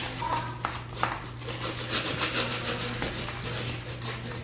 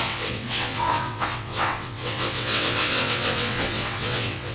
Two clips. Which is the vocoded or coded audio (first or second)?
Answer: second